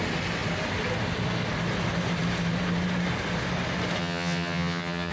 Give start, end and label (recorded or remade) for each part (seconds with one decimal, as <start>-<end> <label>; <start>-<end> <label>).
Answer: 0.0-4.0 recorded; 4.0-5.1 remade